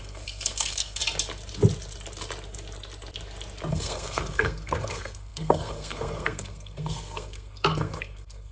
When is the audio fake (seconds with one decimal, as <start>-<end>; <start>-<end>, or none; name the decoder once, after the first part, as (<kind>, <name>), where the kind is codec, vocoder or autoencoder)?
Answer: 0.0-1.0 (codec, SNAC); 3.7-8.5